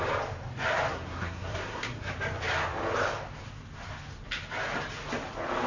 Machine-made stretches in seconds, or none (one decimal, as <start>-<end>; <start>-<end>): 0.9-2.1